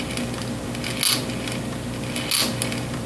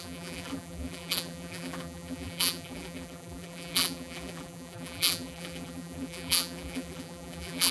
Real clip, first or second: first